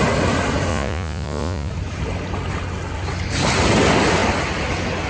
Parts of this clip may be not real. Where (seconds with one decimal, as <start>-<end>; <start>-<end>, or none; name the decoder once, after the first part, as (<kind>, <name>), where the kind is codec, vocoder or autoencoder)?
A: 0.7-1.7 (vocoder, Vocos)